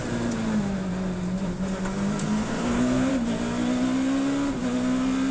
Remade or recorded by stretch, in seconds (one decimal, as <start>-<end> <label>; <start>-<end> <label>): 0.0-2.2 recorded; 2.2-3.1 remade; 3.1-5.3 recorded